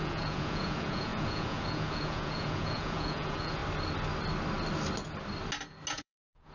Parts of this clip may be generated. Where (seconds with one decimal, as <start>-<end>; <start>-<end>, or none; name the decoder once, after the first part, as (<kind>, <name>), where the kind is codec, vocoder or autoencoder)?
0.0-3.6 (vocoder, Vocos); 5.9-6.5